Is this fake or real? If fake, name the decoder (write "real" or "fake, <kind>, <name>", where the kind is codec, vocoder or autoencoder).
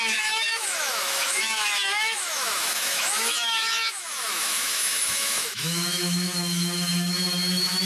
fake, autoencoder, DAC-VAE